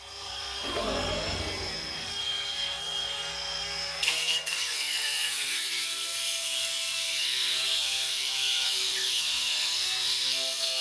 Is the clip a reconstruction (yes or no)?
yes